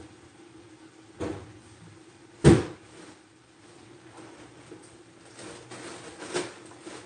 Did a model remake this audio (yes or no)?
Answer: no